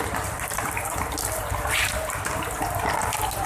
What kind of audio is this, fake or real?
fake